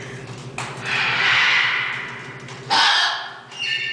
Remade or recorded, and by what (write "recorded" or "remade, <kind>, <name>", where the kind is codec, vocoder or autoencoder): recorded